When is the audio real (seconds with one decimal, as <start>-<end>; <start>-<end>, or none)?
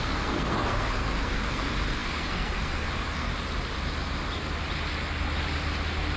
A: 3.3-6.2